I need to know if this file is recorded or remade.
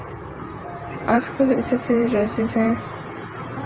remade